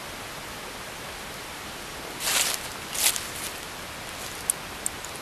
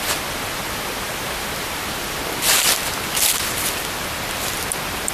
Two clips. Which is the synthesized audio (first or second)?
second